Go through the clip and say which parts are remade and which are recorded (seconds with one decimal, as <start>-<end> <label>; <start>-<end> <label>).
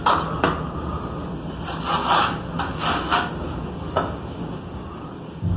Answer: 0.0-2.0 recorded; 2.0-5.6 remade